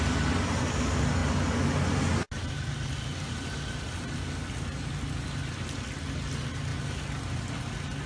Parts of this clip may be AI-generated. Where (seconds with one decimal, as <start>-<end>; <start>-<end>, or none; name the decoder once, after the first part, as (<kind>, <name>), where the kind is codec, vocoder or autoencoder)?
none